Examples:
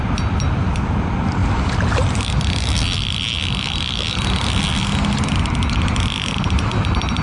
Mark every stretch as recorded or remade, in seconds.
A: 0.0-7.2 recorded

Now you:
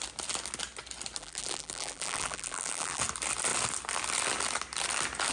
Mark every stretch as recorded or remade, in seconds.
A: 0.0-1.2 recorded; 1.2-3.0 remade; 3.0-5.3 recorded